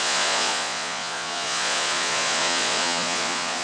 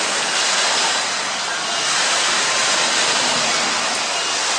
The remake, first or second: first